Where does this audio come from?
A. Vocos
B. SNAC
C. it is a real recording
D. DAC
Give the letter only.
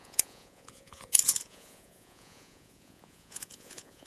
A